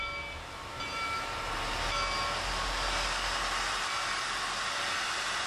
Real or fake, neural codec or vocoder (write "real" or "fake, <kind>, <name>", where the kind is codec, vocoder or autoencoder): real